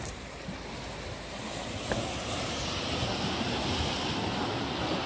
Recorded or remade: recorded